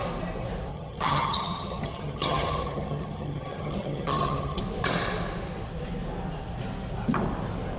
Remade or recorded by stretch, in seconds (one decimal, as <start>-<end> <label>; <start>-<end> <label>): 0.0-0.7 recorded; 0.7-4.6 remade; 4.6-7.8 recorded